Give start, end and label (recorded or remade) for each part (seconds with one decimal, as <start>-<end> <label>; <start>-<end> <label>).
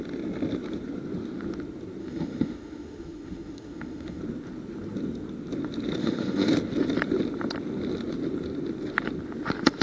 0.0-2.0 recorded; 2.0-4.2 remade; 4.2-6.0 recorded; 6.0-6.5 remade; 6.5-9.8 recorded